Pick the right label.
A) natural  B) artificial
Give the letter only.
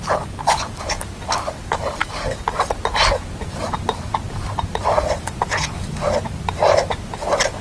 A